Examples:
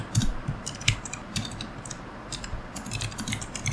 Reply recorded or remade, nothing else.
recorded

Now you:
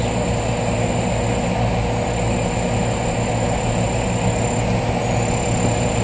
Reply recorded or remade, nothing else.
recorded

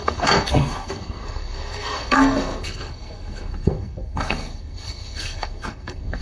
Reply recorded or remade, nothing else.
remade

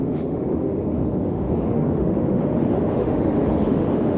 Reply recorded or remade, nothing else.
remade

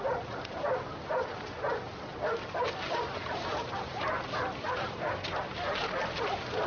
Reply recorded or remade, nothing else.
recorded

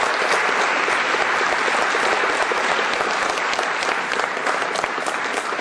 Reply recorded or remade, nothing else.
recorded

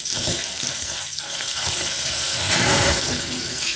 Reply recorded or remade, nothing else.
remade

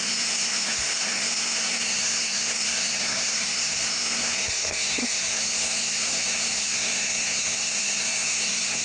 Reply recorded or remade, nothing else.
remade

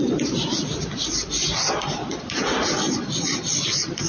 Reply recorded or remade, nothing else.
recorded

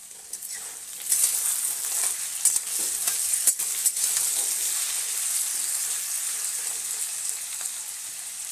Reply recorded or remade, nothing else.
recorded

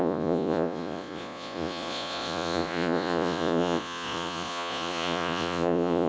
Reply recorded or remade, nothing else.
remade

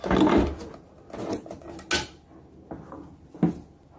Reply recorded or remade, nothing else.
recorded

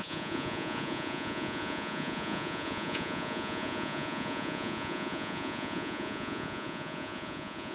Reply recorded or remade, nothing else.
remade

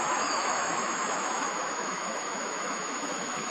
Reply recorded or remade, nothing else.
remade